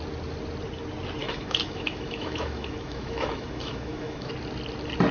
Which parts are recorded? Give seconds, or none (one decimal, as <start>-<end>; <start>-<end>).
0.0-1.2; 4.3-5.1